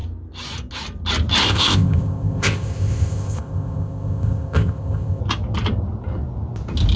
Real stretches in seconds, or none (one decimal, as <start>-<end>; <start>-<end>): 0.0-1.4; 5.2-7.0